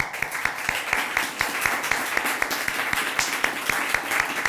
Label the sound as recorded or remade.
recorded